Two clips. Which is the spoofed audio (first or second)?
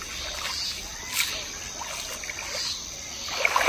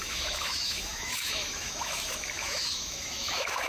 second